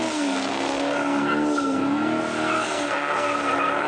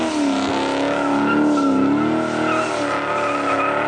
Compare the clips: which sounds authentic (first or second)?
second